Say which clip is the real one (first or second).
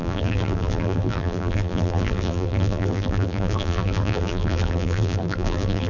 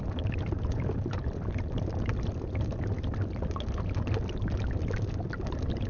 second